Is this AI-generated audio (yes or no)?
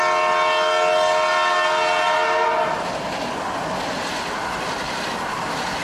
no